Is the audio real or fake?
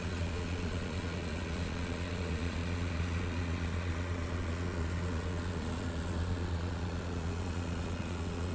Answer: fake